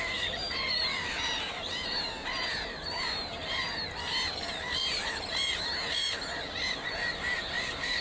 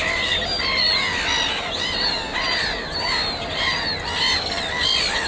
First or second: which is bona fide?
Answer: second